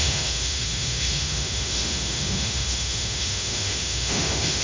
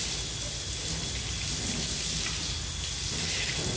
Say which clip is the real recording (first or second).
second